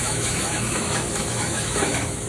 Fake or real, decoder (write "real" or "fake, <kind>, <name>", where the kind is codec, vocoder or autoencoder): fake, autoencoder, DAC-VAE